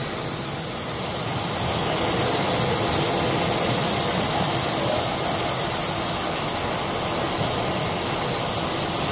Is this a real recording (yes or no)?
yes